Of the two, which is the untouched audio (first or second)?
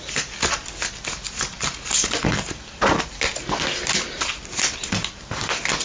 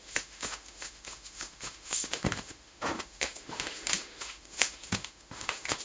first